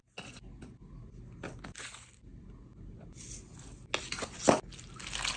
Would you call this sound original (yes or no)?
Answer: yes